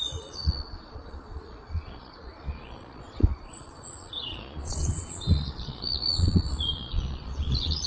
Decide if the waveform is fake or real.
fake